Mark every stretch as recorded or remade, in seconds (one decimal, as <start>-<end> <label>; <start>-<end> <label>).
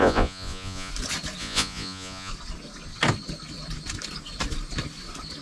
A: 0.0-0.9 remade; 0.9-1.4 recorded; 1.4-2.3 remade; 2.3-5.4 recorded